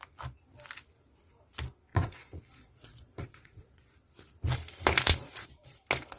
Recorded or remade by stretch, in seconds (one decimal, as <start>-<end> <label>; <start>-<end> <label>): 0.0-1.9 recorded; 1.9-3.9 remade; 3.9-5.2 recorded; 5.2-5.8 remade; 5.8-6.2 recorded